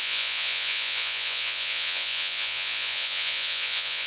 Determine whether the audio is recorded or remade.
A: remade